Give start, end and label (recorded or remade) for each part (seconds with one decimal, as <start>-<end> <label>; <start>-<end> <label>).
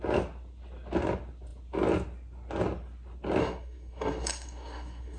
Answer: 0.0-3.4 recorded; 3.4-5.2 remade